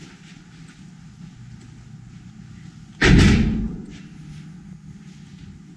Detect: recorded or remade recorded